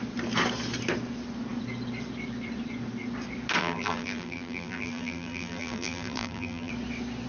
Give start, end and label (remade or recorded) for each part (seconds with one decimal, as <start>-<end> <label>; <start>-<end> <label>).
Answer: 0.0-3.6 recorded; 3.6-6.7 remade; 6.7-7.3 recorded